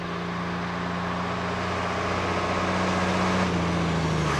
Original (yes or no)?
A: yes